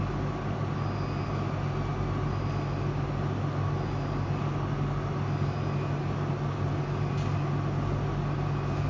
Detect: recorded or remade recorded